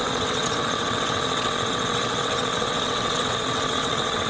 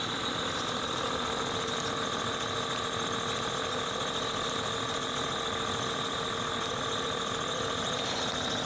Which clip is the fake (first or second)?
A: first